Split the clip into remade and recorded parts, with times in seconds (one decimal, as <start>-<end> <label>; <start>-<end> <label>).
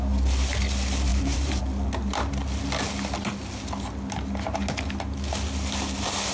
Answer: 0.0-1.1 recorded; 1.1-1.6 remade; 1.6-6.3 recorded